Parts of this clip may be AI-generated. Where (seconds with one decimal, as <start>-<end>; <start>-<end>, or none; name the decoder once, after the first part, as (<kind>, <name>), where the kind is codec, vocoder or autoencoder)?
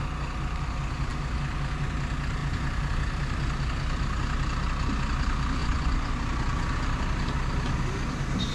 5.6-6.1 (vocoder, Vocos)